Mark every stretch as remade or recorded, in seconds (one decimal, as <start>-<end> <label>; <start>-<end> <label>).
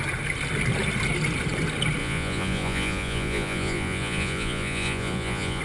0.0-2.0 recorded; 2.0-5.6 remade